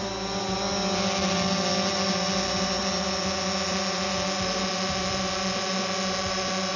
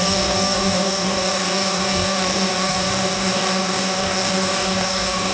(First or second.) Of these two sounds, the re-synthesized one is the second